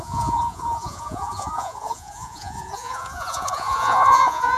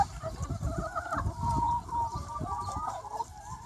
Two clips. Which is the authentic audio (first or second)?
second